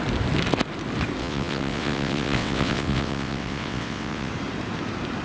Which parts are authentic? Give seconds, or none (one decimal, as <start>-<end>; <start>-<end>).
0.0-1.2; 4.3-5.2